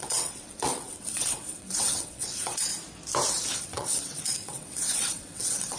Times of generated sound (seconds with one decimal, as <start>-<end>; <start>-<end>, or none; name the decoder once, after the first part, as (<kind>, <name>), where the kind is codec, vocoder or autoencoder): 0.0-2.7 (vocoder, WaveNeXt); 3.6-5.8